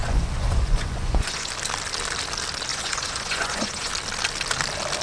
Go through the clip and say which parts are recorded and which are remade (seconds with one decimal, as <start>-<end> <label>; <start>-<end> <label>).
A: 0.0-1.5 remade; 1.5-2.7 recorded; 2.7-3.9 remade; 3.9-5.0 recorded